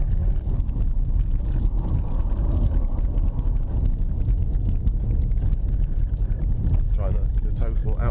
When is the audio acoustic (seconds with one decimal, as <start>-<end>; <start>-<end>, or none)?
0.0-0.4; 3.0-6.0; 7.5-8.1